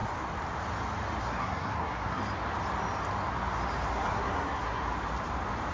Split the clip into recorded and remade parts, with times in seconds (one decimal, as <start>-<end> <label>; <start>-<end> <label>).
0.0-1.2 recorded; 1.2-2.2 remade; 2.2-3.9 recorded; 3.9-4.8 remade; 4.8-5.7 recorded